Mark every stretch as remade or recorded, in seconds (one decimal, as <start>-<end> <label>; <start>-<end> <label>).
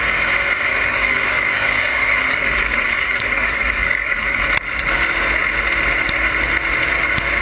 0.0-0.7 recorded; 0.7-4.4 remade; 4.4-7.4 recorded